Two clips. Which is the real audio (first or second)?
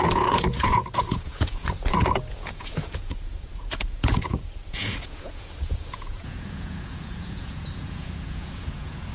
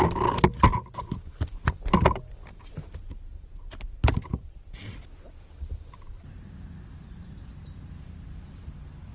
second